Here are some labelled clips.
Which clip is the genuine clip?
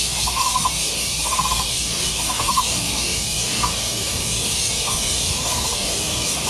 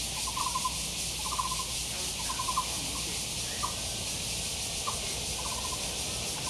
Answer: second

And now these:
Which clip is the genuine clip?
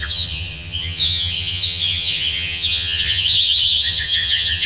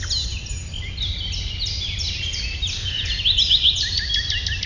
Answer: second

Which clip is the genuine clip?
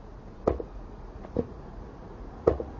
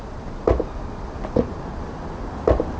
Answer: second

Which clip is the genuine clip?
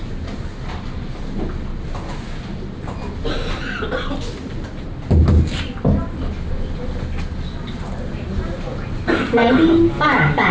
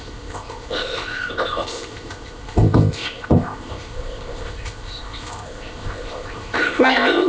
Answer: first